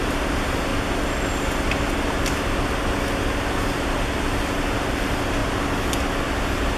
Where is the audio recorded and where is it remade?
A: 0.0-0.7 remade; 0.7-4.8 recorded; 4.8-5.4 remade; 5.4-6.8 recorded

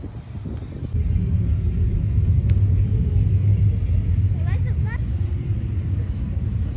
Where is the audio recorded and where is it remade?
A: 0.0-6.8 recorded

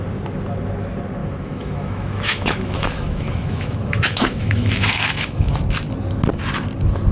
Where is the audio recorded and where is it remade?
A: 0.0-1.2 recorded; 1.2-5.5 remade; 5.5-7.1 recorded

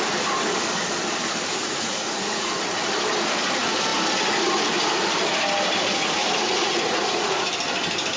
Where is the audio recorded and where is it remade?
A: 0.0-1.6 recorded; 1.6-2.5 remade; 2.5-6.2 recorded; 6.2-7.5 remade; 7.5-8.2 recorded

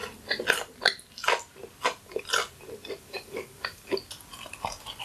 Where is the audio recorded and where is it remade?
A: 0.0-3.0 recorded; 3.0-4.0 remade; 4.0-5.0 recorded

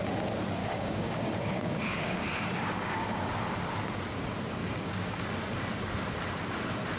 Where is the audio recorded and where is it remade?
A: 0.0-0.6 recorded; 0.6-3.3 remade; 3.3-4.6 recorded; 4.6-5.2 remade; 5.2-7.0 recorded

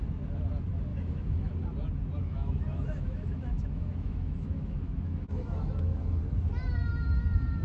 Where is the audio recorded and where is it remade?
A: 0.0-0.9 recorded; 0.9-1.5 remade; 1.5-2.2 recorded; 2.2-6.2 remade; 6.2-7.6 recorded